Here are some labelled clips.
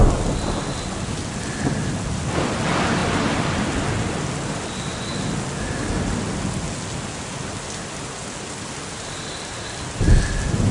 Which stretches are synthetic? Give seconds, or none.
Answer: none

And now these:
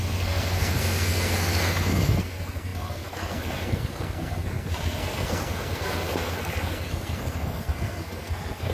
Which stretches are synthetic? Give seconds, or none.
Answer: 0.0-8.7 (codec, SNAC)

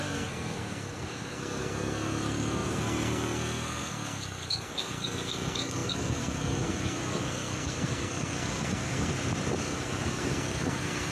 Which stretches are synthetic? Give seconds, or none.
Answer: 0.0-9.1 (codec, SNAC); 9.6-11.1

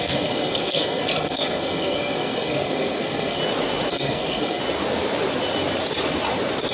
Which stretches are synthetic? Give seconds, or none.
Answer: 0.0-3.4 (codec, SNAC); 3.9-4.6

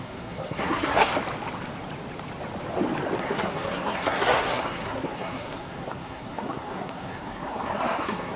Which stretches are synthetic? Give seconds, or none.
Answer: 0.0-1.1 (codec, SNAC); 3.2-8.4

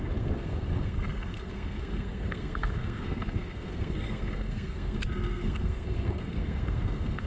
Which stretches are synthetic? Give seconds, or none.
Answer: 0.0-7.3 (codec, SNAC)

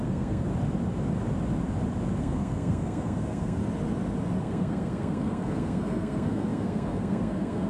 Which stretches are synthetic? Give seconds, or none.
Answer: 0.0-0.5 (codec, SNAC); 2.2-3.6; 4.4-7.7

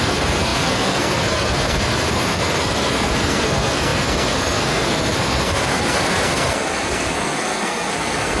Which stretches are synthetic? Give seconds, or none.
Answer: 0.0-8.4 (codec, SNAC)